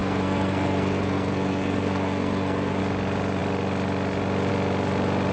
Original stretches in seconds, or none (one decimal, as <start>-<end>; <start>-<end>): 2.8-5.3